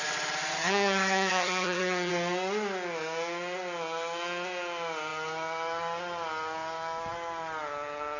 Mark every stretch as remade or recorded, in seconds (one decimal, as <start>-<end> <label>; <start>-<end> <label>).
0.0-0.6 recorded; 0.6-2.1 remade; 2.1-8.2 recorded